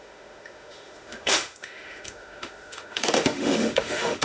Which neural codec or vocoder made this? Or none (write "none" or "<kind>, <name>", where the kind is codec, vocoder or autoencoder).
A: autoencoder, DAC-VAE